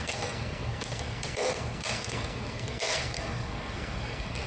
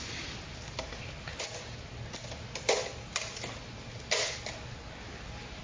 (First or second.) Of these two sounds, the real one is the second